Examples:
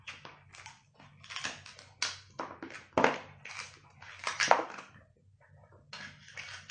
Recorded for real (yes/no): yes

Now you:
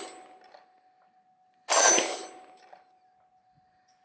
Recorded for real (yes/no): yes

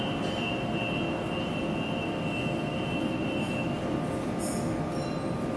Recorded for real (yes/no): yes